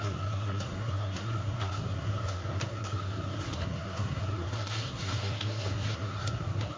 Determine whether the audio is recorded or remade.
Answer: remade